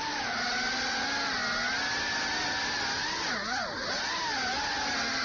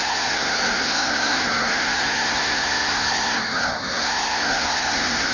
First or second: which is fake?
second